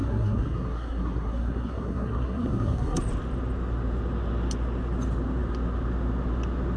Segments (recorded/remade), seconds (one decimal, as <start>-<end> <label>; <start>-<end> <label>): 0.0-3.0 remade; 3.0-6.8 recorded